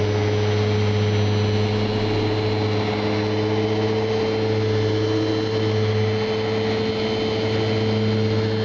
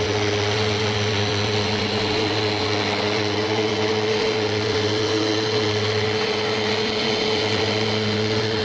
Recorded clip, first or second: first